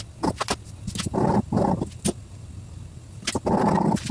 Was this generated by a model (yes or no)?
no